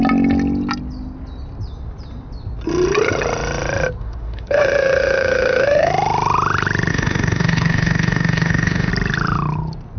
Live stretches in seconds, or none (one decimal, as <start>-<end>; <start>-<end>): 0.0-4.0; 5.9-6.9; 8.9-10.0